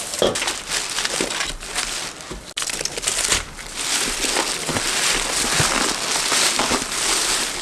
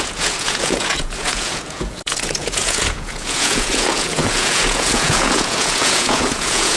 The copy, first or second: second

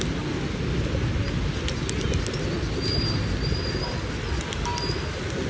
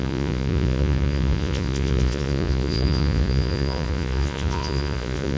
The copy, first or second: second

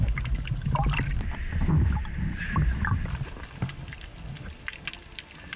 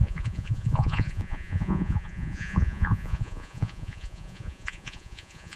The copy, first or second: second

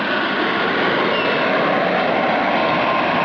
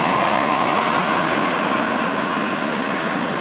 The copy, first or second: second